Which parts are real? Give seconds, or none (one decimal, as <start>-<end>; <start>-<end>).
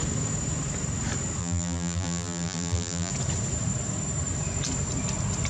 0.0-1.4; 3.1-5.5